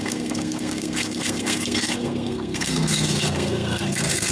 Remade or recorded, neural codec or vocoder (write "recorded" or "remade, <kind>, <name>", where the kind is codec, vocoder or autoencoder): remade, codec, SNAC